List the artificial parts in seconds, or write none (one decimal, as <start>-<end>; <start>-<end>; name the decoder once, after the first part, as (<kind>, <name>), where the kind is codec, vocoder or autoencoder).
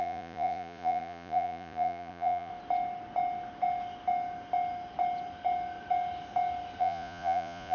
0.0-2.5 (vocoder, Vocos); 6.8-7.7